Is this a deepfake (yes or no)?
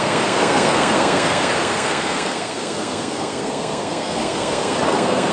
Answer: yes